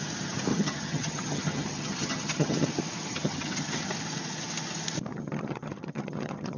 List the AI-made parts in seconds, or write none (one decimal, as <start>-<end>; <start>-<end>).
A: 0.5-2.7; 3.1-3.9; 5.1-6.6